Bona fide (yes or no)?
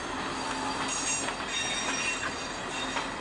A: yes